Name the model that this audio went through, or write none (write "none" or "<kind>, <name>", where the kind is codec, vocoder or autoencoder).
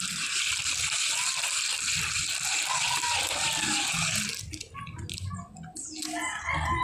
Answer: none